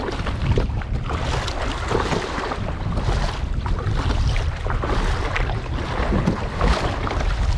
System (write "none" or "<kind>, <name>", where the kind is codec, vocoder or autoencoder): none